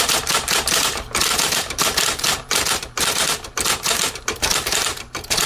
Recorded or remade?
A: remade